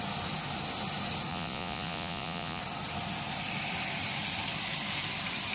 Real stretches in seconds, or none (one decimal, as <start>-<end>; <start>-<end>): 0.0-1.3; 2.6-5.5